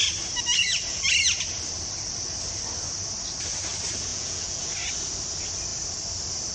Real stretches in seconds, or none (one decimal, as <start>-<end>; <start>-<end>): 0.0-4.1; 4.7-6.5